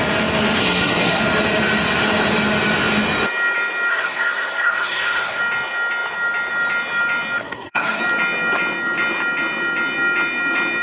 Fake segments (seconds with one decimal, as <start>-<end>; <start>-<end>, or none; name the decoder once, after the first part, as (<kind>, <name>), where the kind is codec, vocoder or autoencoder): 0.6-1.2 (codec, SNAC); 3.9-5.4; 7.4-8.0